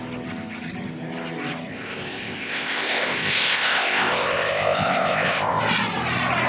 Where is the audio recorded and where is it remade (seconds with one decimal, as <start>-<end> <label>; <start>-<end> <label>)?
0.0-1.7 recorded; 1.7-5.6 remade; 5.6-6.5 recorded